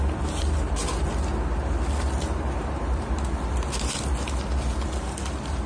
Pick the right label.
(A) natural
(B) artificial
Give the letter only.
A